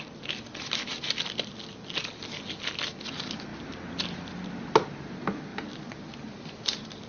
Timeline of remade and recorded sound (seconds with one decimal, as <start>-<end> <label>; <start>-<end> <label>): 0.0-7.1 recorded